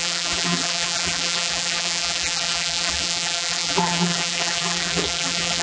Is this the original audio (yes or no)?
no